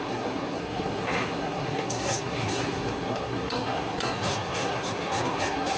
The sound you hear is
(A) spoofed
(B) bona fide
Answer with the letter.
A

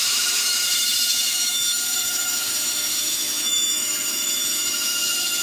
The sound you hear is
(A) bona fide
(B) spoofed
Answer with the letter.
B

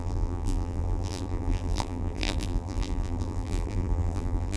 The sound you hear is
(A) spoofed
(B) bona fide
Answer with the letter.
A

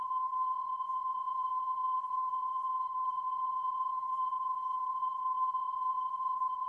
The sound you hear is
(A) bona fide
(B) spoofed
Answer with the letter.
B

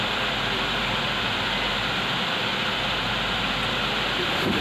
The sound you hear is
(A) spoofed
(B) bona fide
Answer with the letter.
B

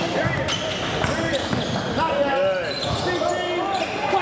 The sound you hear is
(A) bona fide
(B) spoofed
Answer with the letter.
A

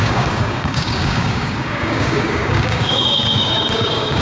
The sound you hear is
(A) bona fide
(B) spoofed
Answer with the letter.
B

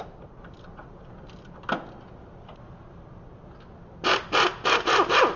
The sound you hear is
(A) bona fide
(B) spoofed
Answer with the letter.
A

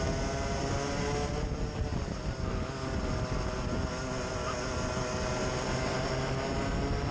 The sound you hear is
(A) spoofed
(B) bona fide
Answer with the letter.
B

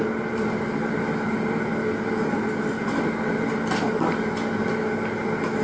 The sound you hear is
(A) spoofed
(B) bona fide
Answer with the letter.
B